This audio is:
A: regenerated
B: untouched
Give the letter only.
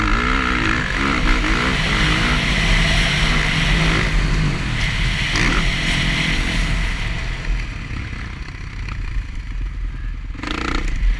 B